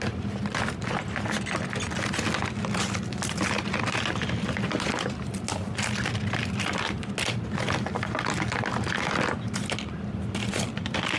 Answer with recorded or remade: recorded